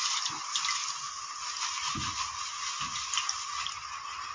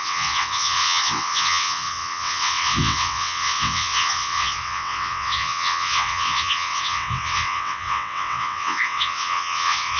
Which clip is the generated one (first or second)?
second